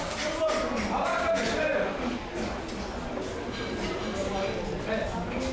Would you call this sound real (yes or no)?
yes